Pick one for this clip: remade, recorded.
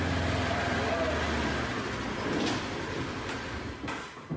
recorded